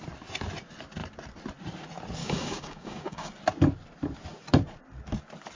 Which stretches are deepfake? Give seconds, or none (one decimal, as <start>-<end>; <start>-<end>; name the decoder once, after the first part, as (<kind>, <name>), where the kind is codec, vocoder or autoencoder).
2.2-3.3 (codec, DAC)